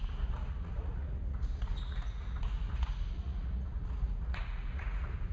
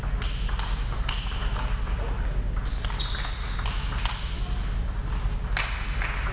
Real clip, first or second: second